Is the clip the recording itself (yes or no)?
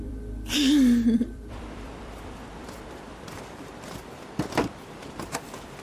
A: no